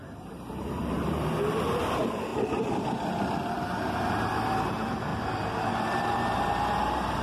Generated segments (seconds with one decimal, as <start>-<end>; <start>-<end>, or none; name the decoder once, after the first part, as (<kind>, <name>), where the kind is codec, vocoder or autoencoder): 0.0-5.1 (vocoder, BigVGAN v2); 5.7-7.2